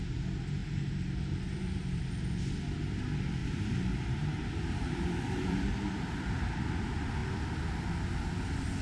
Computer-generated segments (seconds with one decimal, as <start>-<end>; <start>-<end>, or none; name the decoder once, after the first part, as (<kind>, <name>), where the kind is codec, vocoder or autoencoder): 0.6-2.0 (vocoder, BigVGAN v2); 3.4-5.7